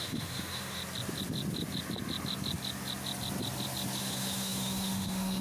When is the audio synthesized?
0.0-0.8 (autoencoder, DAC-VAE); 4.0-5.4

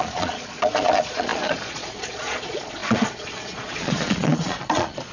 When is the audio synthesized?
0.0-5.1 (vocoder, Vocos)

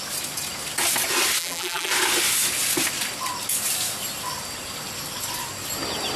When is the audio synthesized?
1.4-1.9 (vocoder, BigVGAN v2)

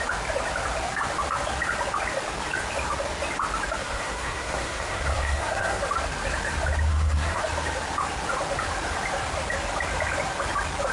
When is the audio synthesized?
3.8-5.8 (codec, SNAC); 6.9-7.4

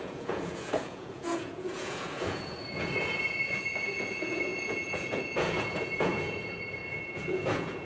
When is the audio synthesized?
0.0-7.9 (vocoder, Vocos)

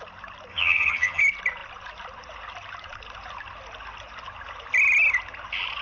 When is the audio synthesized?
0.5-1.2 (vocoder, HiFi-GAN)